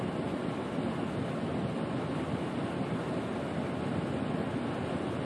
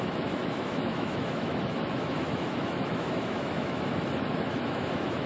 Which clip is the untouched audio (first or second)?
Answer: first